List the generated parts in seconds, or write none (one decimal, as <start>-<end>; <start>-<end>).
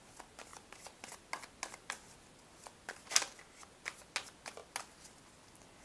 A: none